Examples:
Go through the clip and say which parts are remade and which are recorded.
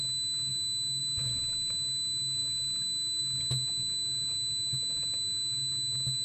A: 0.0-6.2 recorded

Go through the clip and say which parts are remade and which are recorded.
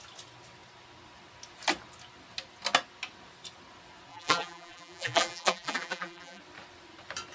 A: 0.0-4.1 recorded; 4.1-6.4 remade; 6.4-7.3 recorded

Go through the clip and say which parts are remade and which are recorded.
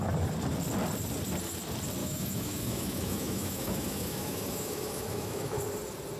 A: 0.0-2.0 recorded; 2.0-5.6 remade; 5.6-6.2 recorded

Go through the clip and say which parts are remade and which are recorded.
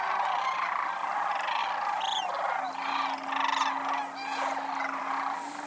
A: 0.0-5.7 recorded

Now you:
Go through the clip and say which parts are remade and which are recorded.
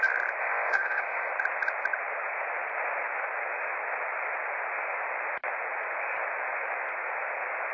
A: 0.0-0.4 recorded; 0.4-1.3 remade; 1.3-7.7 recorded